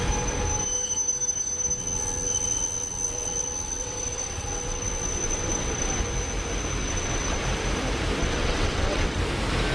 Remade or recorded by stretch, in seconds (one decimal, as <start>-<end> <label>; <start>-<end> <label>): 0.0-1.8 recorded; 1.8-6.0 remade; 6.0-6.8 recorded; 6.8-7.4 remade; 7.4-8.2 recorded; 8.2-9.2 remade; 9.2-9.7 recorded